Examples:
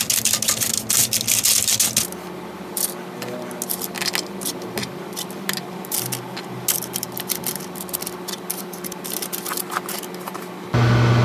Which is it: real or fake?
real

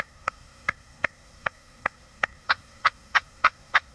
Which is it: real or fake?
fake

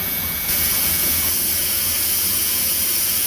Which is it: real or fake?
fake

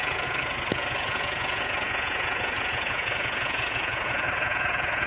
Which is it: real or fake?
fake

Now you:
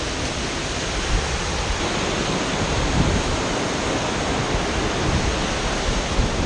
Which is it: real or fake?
real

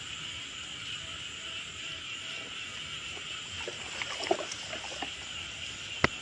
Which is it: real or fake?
real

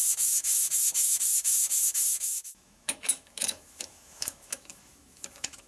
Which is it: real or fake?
fake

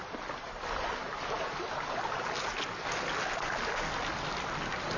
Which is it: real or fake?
real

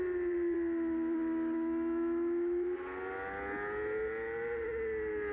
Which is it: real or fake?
real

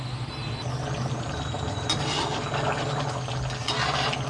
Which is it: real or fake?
real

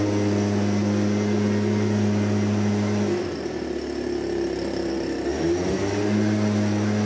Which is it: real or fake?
real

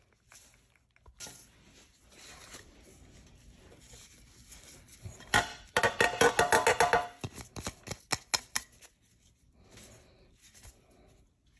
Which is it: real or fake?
real